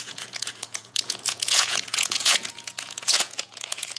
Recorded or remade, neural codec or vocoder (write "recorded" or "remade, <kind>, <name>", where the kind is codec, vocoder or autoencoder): remade, vocoder, Vocos